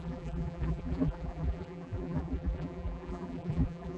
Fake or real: fake